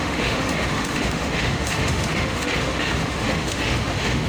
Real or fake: fake